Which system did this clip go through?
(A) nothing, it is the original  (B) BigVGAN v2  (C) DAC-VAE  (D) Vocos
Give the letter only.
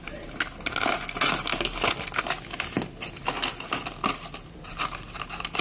A